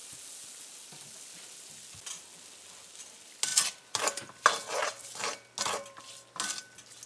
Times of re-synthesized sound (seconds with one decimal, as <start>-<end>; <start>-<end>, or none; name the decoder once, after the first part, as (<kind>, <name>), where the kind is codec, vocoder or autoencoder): none